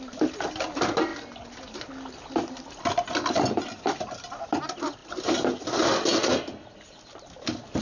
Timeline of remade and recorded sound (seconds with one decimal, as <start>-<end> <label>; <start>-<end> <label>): 0.0-7.8 recorded